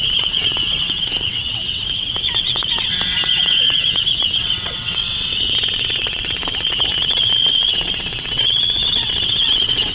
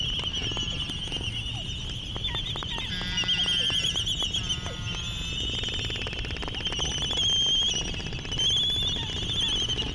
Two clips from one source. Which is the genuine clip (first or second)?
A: second